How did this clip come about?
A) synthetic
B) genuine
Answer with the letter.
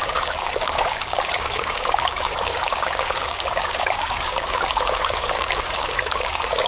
A